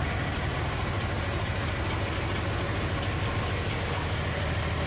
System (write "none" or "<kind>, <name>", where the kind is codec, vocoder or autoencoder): none